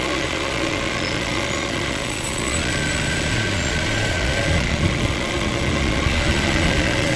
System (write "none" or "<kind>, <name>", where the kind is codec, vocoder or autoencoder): vocoder, Vocos